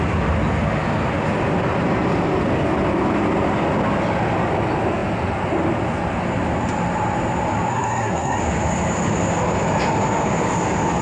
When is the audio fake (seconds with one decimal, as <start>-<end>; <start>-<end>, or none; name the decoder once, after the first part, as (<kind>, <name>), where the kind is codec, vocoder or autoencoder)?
7.7-8.4 (codec, SNAC)

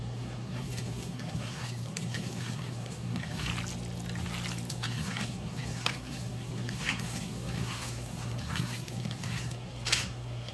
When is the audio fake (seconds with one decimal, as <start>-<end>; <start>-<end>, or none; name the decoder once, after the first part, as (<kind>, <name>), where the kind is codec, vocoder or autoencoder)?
0.0-3.5 (codec, SNAC); 4.7-10.5

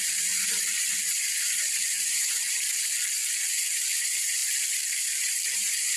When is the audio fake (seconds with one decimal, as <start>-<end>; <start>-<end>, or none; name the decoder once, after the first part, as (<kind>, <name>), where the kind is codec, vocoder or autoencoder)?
0.0-3.2 (vocoder, BigVGAN v2); 4.0-6.0

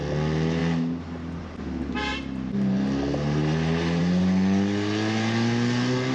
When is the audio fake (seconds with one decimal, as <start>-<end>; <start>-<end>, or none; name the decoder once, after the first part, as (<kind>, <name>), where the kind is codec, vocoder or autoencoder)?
none

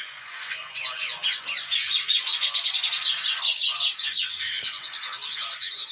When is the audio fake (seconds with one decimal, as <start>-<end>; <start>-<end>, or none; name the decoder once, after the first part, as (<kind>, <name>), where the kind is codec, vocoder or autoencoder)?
0.0-5.9 (vocoder, Vocos)

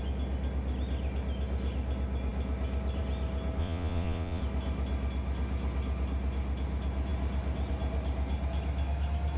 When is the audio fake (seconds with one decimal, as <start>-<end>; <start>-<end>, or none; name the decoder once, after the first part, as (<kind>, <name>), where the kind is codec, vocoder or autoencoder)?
3.6-4.4 (vocoder, Vocos)

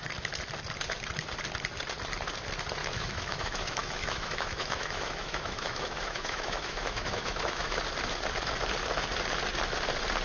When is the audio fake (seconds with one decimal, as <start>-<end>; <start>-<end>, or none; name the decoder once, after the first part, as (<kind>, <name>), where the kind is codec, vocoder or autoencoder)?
2.8-7.8 (autoencoder, DAC-VAE)